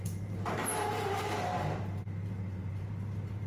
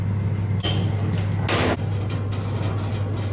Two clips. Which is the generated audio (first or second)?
first